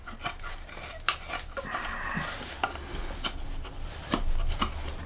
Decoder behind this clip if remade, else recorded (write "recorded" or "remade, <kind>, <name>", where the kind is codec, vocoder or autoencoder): recorded